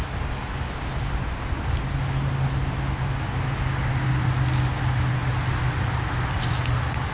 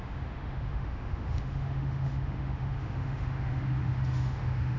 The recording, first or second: first